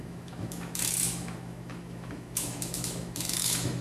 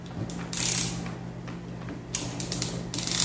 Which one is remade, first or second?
first